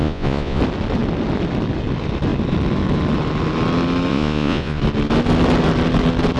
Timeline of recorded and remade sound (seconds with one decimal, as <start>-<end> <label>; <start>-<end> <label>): 0.0-0.6 remade; 0.6-4.1 recorded; 4.1-4.8 remade; 4.8-6.4 recorded